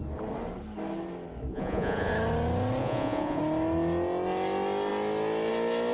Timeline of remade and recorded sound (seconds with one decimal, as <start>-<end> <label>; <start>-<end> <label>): 0.0-1.5 recorded; 1.5-2.1 remade; 2.1-2.8 recorded; 2.8-3.4 remade; 3.4-5.9 recorded